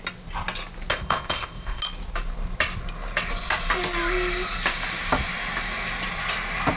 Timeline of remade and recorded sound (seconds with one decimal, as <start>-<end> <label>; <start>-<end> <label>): 0.0-0.9 recorded; 0.9-1.8 remade; 1.8-6.8 recorded